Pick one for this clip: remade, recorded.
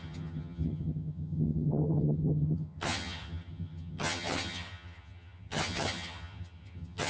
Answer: remade